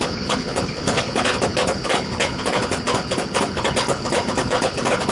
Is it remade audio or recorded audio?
remade